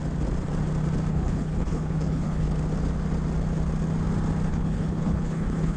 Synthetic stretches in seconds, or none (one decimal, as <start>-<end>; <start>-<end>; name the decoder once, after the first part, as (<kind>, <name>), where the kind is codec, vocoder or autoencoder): 1.1-2.5 (codec, HILCodec); 4.5-5.8